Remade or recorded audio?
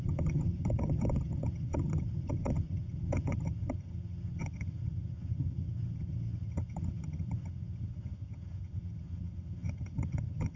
remade